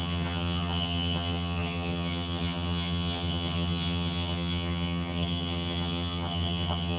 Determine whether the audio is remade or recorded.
remade